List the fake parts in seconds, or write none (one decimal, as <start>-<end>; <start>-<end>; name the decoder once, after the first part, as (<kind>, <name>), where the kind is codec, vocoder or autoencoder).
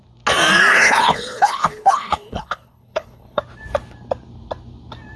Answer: 0.7-3.4 (codec, HILCodec)